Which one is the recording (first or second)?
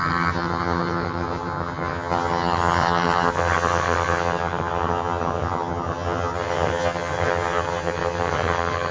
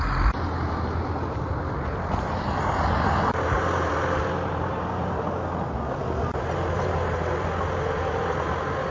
second